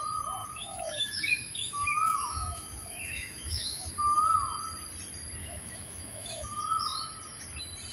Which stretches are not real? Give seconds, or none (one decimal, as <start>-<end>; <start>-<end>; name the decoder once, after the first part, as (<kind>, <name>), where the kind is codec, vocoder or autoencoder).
0.4-3.9 (autoencoder, DAC-VAE); 5.4-6.6